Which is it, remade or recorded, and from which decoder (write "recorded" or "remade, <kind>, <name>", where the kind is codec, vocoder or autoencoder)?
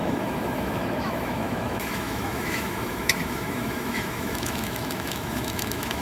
remade, autoencoder, DAC-VAE